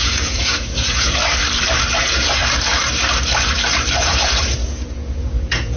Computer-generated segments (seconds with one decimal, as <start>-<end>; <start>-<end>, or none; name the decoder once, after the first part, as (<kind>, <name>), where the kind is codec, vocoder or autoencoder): 0.0-1.2 (vocoder, Vocos); 2.0-2.4; 4.0-5.8